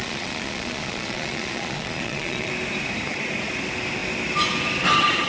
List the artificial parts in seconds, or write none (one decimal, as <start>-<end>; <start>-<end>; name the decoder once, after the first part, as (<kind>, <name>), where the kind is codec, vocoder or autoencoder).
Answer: 0.0-2.5 (vocoder, Vocos)

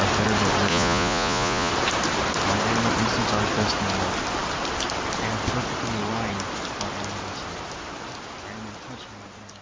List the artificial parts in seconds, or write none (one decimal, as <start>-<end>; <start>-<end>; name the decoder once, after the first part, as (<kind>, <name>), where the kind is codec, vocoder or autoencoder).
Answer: 0.7-1.7 (vocoder, Vocos)

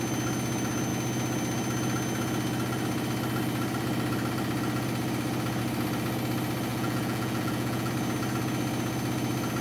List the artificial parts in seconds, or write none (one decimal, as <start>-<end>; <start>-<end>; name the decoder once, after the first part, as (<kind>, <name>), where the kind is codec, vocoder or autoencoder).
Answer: 6.7-7.9 (vocoder, Vocos)

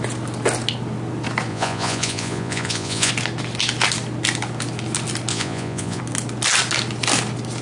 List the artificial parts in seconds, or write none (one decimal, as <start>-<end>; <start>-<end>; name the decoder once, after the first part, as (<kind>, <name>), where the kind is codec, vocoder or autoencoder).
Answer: 1.5-3.1 (vocoder, Vocos); 5.3-6.0

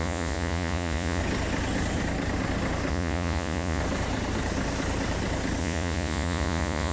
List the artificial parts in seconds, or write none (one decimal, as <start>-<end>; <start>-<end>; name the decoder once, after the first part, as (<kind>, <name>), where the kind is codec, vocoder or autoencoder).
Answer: 0.0-1.2 (vocoder, Vocos); 2.9-3.8; 5.6-6.9

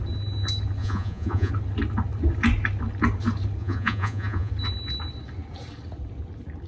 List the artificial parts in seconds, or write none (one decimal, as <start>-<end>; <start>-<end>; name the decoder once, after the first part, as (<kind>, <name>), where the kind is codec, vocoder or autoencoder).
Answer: 0.8-1.5 (vocoder, Vocos); 3.6-4.5

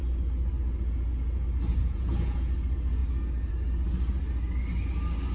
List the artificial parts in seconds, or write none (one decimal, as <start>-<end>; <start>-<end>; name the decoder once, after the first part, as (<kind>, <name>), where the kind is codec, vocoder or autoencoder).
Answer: 1.8-2.4 (vocoder, Vocos)